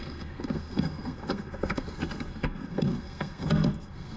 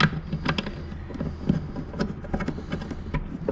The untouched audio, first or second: second